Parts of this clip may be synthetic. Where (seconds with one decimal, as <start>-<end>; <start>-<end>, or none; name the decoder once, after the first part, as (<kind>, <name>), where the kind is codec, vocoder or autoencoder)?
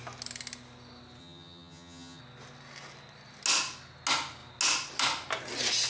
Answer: 1.2-2.2 (vocoder, HiFi-GAN)